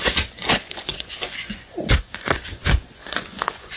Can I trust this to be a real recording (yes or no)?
no